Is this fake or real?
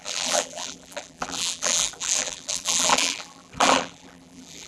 fake